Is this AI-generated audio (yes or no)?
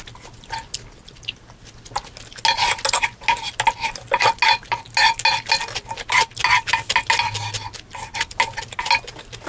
no